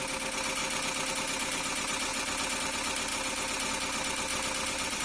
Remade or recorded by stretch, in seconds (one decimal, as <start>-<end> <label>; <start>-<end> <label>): 0.0-2.1 recorded; 2.1-2.6 remade; 2.6-3.1 recorded; 3.1-3.7 remade; 3.7-4.3 recorded; 4.3-5.0 remade